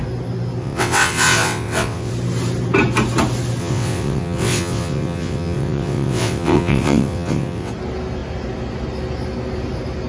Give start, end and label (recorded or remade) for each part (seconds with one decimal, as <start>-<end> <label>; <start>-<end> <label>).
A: 0.0-0.6 recorded; 0.6-2.1 remade; 2.1-3.6 recorded; 3.6-7.7 remade; 7.7-10.1 recorded